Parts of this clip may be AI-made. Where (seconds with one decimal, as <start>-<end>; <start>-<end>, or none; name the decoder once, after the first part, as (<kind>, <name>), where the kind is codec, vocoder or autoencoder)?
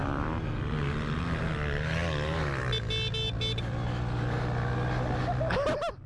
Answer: none